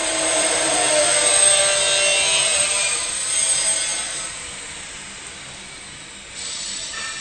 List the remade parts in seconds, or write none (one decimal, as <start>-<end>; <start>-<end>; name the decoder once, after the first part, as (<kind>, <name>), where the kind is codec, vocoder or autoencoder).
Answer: 0.0-1.6 (vocoder, BigVGAN v2); 2.5-3.2